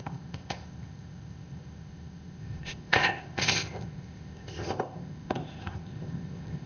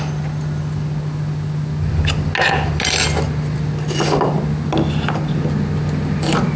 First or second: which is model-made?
first